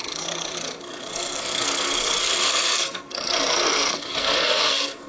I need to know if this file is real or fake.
fake